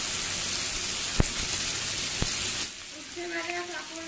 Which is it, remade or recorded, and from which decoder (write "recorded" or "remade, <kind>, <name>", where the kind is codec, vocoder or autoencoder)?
recorded